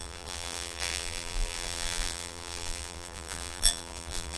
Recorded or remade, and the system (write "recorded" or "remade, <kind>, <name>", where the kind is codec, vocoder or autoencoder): remade, vocoder, BigVGAN v2